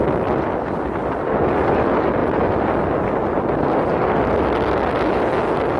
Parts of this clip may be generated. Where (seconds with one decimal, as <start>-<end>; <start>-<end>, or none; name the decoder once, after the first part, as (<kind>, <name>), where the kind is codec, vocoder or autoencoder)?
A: none